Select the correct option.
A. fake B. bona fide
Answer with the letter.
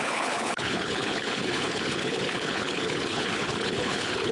A